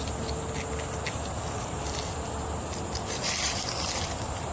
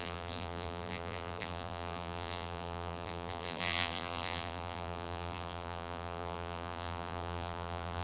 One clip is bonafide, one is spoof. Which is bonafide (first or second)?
first